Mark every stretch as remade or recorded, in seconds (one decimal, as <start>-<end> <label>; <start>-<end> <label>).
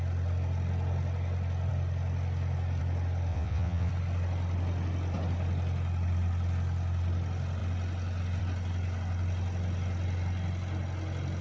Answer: 0.0-3.3 recorded; 3.3-3.9 remade; 3.9-11.4 recorded